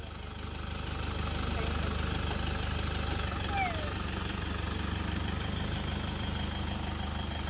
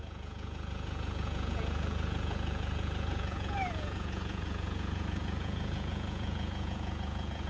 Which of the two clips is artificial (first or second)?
second